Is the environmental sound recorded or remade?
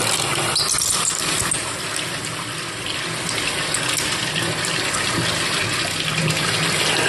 recorded